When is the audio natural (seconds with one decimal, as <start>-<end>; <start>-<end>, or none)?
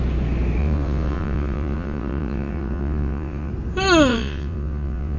0.0-0.6; 3.5-4.1